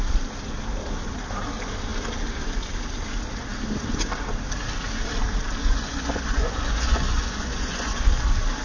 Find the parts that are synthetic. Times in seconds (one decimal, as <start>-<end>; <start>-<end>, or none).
5.6-8.1